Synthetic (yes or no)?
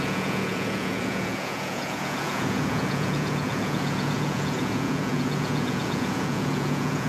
yes